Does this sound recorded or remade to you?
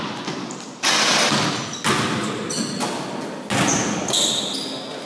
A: recorded